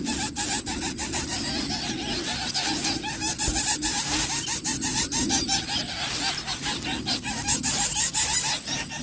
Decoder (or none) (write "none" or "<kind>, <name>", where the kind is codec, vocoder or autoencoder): none